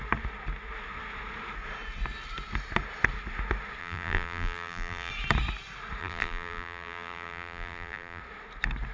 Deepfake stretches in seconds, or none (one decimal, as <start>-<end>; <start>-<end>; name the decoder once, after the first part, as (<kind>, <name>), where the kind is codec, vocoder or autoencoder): 3.8-5.1 (vocoder, BigVGAN v2); 6.0-8.2